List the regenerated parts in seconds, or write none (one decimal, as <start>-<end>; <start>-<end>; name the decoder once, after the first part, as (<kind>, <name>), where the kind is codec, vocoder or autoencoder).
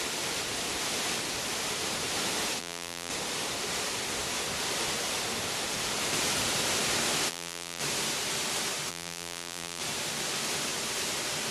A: 2.6-3.1 (vocoder, BigVGAN v2); 7.3-7.8; 8.9-9.8